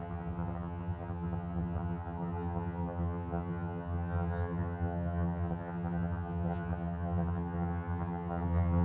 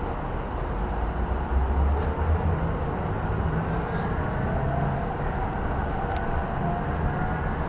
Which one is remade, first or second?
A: first